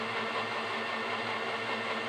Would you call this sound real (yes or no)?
yes